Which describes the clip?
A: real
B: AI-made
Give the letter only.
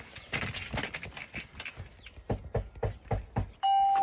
A